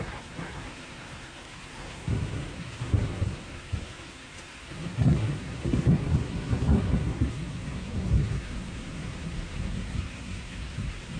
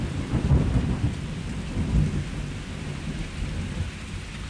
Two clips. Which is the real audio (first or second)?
second